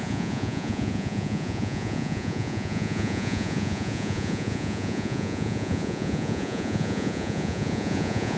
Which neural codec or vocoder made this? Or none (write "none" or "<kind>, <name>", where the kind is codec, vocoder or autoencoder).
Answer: vocoder, Vocos